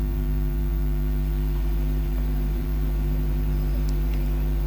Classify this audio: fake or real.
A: fake